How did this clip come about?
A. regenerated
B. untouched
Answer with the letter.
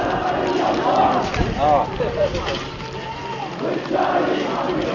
B